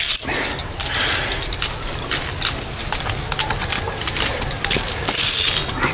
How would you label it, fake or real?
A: real